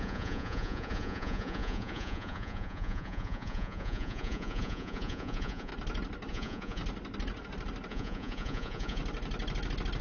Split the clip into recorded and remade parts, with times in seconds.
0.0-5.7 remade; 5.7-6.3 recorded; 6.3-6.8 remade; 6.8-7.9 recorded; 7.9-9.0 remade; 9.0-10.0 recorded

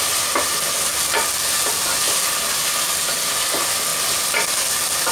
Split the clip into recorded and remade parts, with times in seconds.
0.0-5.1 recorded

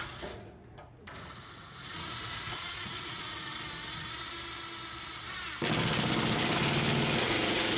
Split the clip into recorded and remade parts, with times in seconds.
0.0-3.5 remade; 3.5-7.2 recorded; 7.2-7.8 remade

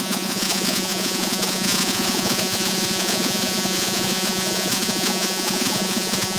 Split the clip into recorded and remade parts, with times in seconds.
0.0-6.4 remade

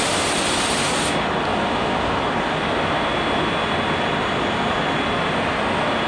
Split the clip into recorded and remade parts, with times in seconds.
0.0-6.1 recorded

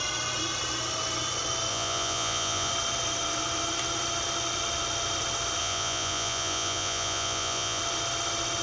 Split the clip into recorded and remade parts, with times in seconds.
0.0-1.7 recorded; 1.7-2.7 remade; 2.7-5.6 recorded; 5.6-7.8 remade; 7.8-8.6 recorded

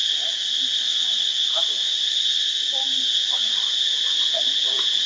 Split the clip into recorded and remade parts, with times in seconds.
0.0-3.1 recorded; 3.1-5.1 remade